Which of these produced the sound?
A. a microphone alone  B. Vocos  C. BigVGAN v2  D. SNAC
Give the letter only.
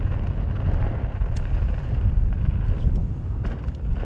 A